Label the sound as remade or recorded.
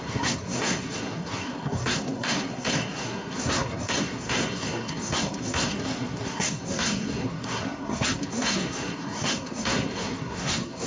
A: remade